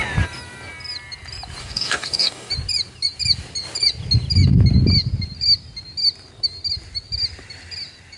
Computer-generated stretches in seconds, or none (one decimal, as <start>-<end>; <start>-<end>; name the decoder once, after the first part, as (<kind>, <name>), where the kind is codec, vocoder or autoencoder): 1.6-2.5 (codec, DAC)